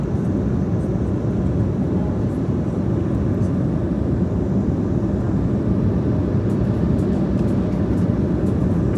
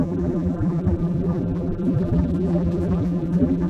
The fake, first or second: second